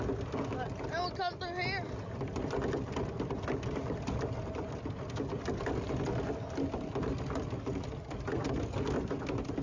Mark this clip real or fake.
real